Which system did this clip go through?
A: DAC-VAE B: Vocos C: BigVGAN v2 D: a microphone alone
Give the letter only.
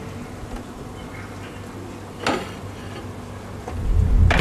D